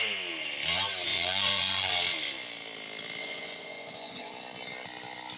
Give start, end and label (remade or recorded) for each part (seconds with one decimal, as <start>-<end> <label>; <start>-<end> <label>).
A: 0.0-1.1 recorded; 1.1-1.9 remade; 1.9-3.2 recorded; 3.2-4.3 remade; 4.3-5.4 recorded